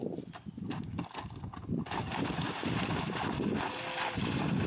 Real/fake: real